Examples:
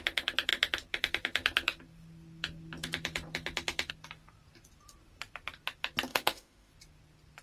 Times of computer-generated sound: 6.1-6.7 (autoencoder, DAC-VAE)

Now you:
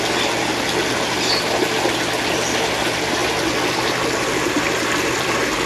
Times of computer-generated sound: none

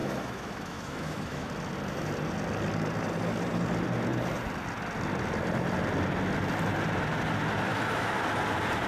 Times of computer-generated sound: 0.0-1.5 (autoencoder, DAC-VAE); 7.7-8.2